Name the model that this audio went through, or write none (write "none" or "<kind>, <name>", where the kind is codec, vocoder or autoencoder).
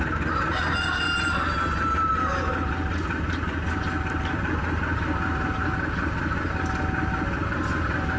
none